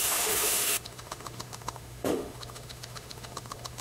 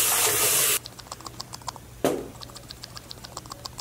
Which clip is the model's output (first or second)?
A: first